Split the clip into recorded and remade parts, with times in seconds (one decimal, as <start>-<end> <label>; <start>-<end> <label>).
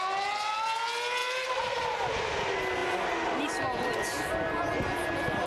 0.0-1.2 recorded; 1.2-2.1 remade; 2.1-5.5 recorded